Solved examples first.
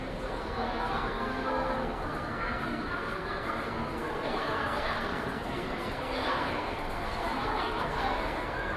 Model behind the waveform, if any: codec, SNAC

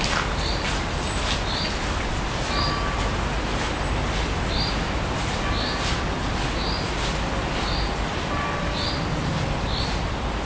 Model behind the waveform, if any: none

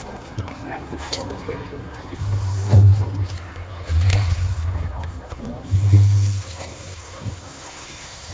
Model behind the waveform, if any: codec, SNAC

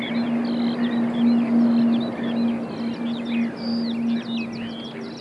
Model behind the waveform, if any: none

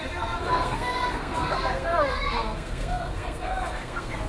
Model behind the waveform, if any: codec, SNAC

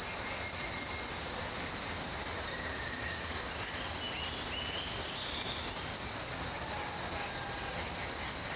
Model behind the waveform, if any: none